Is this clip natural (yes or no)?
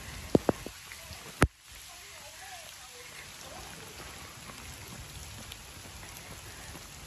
yes